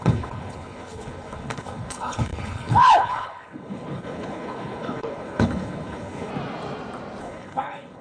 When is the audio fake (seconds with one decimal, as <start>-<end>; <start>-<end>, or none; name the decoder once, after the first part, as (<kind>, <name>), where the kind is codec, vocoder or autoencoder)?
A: 0.0-6.3 (codec, HILCodec); 7.2-8.0